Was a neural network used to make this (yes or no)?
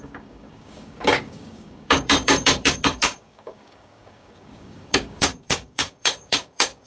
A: yes